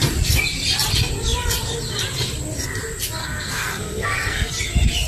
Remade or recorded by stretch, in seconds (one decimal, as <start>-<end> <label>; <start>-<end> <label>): 0.0-3.2 recorded; 3.2-4.5 remade; 4.5-5.1 recorded